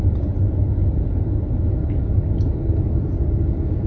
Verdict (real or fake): real